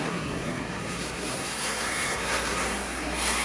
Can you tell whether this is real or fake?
fake